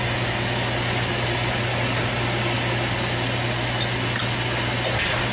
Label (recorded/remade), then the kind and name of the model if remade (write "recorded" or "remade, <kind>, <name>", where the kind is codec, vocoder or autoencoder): recorded